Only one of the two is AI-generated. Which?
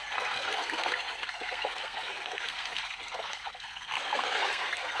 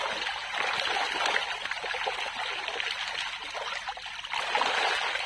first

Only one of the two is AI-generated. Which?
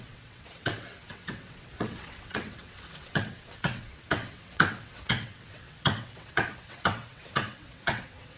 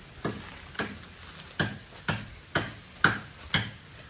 first